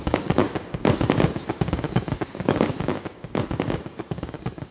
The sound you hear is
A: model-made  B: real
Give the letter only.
A